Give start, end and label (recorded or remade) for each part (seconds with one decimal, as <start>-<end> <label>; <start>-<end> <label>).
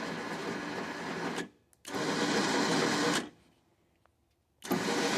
0.0-5.2 recorded